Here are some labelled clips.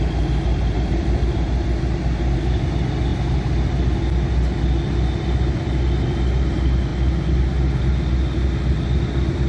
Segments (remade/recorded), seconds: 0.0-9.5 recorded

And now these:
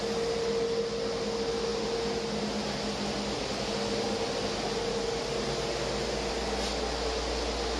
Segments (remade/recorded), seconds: 0.0-7.8 recorded

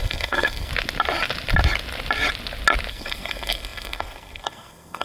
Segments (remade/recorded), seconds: 0.0-0.7 remade; 0.7-2.9 recorded; 2.9-5.0 remade

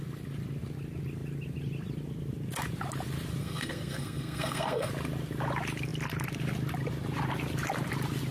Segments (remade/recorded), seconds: 0.0-3.4 recorded; 3.4-4.9 remade; 4.9-8.3 recorded

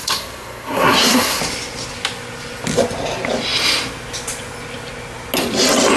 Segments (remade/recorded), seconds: 0.0-1.4 remade; 1.4-6.0 recorded

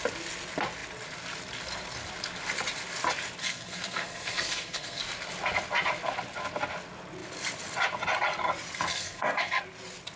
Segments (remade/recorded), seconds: 0.0-3.4 recorded; 3.4-5.0 remade; 5.0-8.9 recorded; 8.9-9.6 remade; 9.6-10.2 recorded

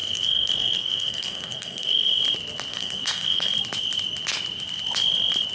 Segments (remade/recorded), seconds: 0.0-2.2 remade; 2.2-2.7 recorded; 2.7-3.5 remade; 3.5-5.5 recorded

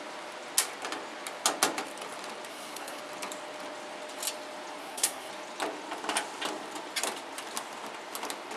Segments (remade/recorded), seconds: 0.0-2.5 recorded; 2.5-3.0 remade; 3.0-4.8 recorded; 4.8-5.3 remade; 5.3-8.6 recorded